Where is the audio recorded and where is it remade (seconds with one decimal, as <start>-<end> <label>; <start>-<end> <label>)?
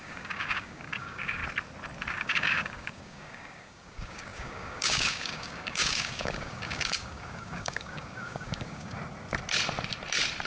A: 0.0-1.4 remade; 1.4-2.1 recorded; 2.1-9.0 remade; 9.0-10.5 recorded